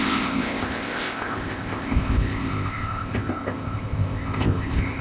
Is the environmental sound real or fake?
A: fake